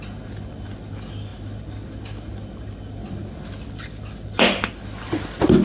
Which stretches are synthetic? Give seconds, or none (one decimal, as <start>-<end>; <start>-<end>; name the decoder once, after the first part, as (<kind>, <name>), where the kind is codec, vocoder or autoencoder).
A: none